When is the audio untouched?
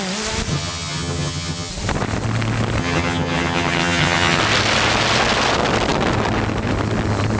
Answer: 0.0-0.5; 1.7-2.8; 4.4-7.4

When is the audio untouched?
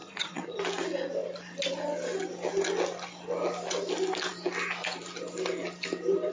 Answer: 0.6-6.3